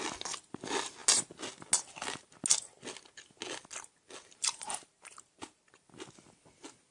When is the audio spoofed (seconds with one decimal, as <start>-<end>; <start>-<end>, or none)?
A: 4.4-5.6